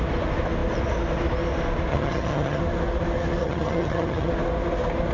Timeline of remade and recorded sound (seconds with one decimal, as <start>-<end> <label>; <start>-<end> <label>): 0.0-1.9 recorded; 1.9-2.6 remade; 2.6-3.4 recorded; 3.4-4.3 remade; 4.3-5.1 recorded